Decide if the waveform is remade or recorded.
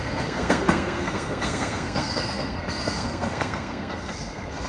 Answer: remade